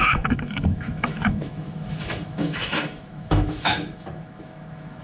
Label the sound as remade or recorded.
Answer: remade